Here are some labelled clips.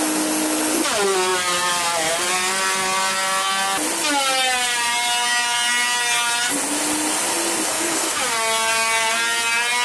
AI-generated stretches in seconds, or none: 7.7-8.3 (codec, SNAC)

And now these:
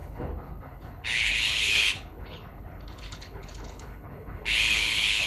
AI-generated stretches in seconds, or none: 0.0-5.3 (codec, HILCodec)

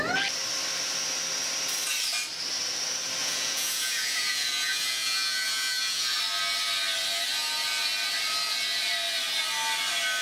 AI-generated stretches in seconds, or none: 3.2-6.2 (vocoder, Vocos)

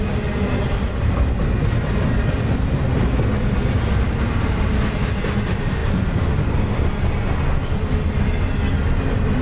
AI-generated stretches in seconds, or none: none